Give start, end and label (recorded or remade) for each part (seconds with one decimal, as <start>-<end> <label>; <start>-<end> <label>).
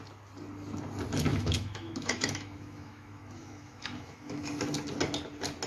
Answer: 0.0-1.3 recorded; 1.3-4.6 remade; 4.6-5.7 recorded